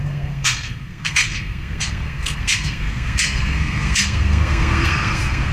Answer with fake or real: fake